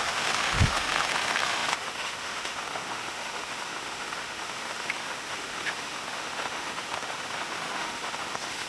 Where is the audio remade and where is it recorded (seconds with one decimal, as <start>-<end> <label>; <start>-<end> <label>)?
0.0-8.7 remade